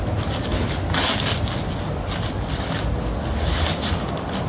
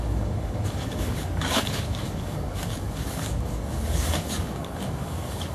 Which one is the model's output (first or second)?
second